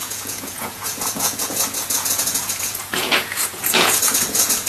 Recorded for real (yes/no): no